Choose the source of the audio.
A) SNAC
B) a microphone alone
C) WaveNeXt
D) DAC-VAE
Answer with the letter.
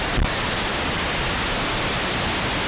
B